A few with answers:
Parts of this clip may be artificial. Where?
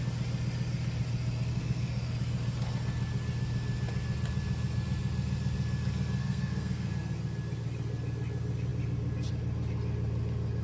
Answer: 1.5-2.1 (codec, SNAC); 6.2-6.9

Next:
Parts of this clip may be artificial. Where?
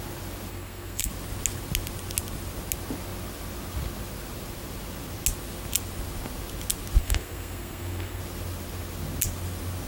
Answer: 0.5-1.1 (codec, SNAC); 7.0-8.2